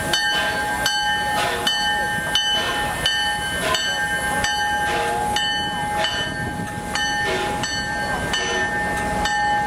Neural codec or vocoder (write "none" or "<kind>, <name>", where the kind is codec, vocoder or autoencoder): none